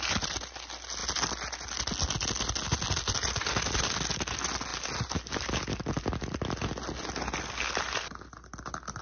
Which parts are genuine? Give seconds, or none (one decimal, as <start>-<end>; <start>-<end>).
0.0-9.0